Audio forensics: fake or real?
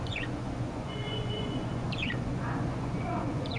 fake